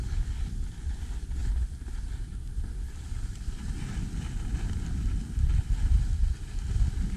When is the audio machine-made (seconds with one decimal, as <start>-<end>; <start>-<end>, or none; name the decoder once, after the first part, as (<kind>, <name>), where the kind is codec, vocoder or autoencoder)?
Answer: none